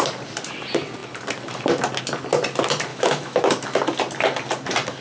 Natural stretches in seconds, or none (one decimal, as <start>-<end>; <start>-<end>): 0.0-2.9; 3.5-5.0